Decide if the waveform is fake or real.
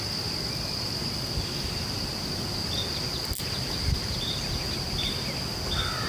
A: real